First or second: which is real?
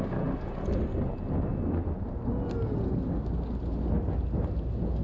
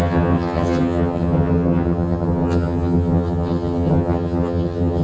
first